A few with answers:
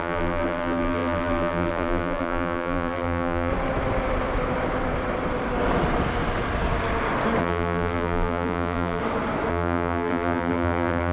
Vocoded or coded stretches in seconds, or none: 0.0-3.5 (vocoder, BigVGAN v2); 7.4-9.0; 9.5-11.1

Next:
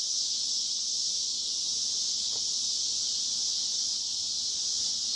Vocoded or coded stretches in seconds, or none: none